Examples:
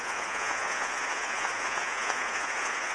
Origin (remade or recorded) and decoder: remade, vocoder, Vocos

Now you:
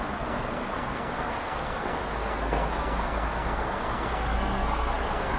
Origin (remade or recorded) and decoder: remade, codec, SNAC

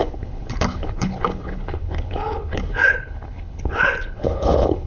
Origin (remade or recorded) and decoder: remade, codec, HILCodec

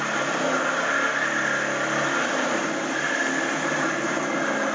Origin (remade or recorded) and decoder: recorded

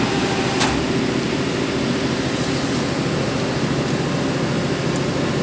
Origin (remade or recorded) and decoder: recorded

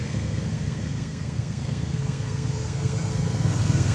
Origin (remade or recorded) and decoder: remade, codec, SNAC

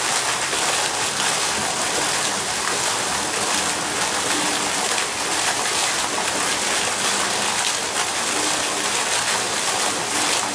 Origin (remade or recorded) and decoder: recorded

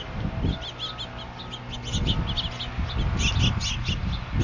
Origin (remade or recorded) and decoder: recorded